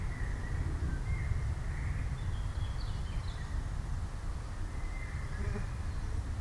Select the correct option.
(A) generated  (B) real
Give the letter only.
B